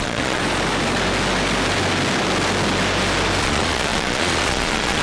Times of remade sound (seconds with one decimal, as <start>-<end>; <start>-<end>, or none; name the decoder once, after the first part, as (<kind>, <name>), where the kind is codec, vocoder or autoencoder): 0.0-0.4 (vocoder, Vocos); 3.4-5.0